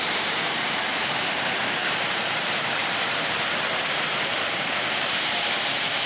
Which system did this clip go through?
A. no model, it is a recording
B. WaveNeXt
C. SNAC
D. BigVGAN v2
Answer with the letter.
D